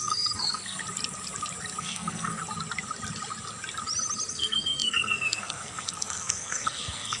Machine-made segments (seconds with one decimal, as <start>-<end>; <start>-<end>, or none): 0.0-0.8; 1.8-2.4; 4.3-7.2